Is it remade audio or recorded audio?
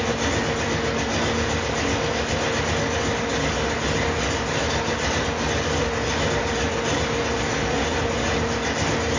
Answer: recorded